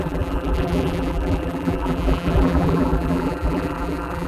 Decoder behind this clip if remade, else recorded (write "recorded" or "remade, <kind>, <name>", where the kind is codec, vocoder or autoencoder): remade, vocoder, BigVGAN v2